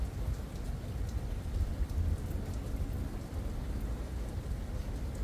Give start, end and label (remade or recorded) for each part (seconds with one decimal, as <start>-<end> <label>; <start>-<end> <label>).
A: 0.0-5.2 recorded